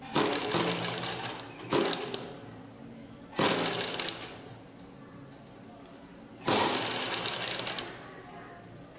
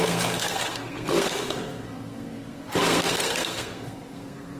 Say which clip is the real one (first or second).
first